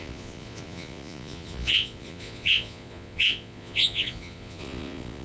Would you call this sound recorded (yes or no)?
no